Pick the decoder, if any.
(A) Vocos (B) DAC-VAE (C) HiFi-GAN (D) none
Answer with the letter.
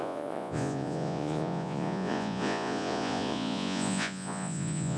A